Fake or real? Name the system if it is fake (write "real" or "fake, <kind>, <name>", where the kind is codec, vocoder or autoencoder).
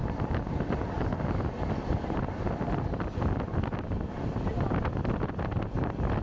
real